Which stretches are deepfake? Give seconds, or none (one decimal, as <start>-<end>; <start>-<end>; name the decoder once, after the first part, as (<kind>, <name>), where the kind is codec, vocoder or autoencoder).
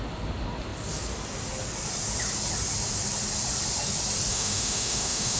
4.3-5.4 (autoencoder, DAC-VAE)